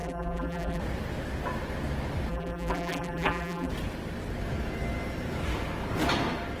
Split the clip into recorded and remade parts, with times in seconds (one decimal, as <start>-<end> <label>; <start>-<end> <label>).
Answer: 0.0-0.8 remade; 0.8-2.3 recorded; 2.3-3.7 remade; 3.7-6.6 recorded